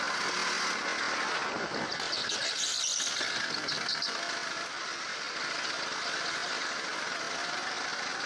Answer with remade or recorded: recorded